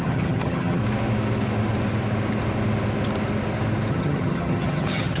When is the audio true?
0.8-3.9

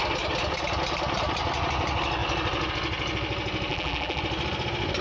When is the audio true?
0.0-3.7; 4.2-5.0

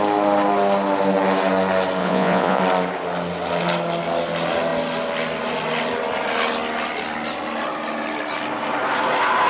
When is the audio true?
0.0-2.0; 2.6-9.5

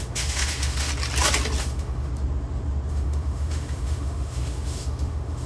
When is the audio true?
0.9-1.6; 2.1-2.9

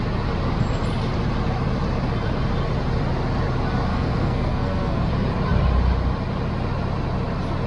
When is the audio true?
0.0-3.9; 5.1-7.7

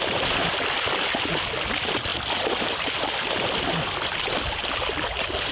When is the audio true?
0.0-5.5

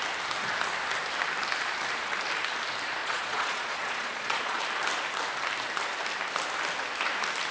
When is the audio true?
0.0-3.0; 4.6-7.5